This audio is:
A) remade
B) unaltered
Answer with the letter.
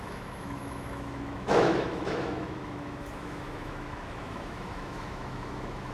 A